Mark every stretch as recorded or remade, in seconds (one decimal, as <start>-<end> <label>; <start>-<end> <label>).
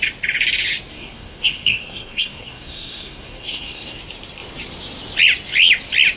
0.0-0.9 recorded; 0.9-4.0 remade; 4.0-6.2 recorded